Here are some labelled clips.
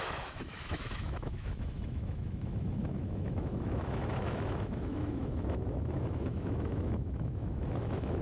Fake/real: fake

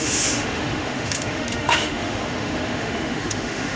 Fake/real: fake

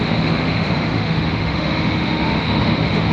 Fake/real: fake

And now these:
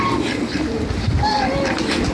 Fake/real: real